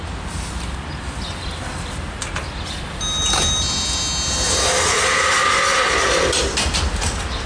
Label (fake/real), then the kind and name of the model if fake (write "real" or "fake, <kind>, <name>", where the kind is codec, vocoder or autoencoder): real